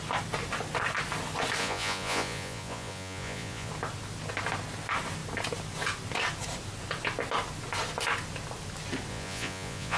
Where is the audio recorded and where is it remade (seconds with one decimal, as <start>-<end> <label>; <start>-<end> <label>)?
0.0-1.6 recorded; 1.6-3.7 remade; 3.7-9.1 recorded; 9.1-10.0 remade